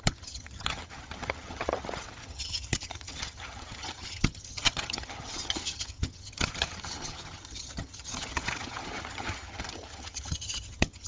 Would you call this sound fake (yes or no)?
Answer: yes